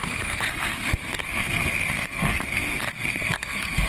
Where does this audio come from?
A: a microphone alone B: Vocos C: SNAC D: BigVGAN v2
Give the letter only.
C